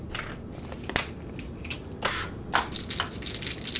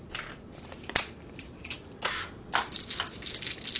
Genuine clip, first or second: first